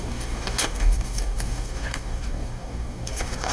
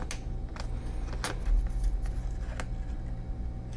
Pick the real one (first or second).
second